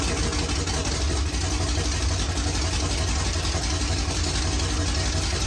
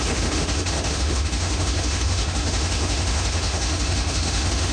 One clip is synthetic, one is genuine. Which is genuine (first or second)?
first